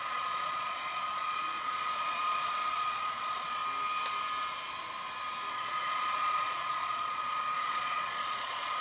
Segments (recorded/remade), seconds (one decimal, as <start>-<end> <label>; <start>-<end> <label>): 0.0-3.6 remade; 3.6-5.5 recorded; 5.5-8.8 remade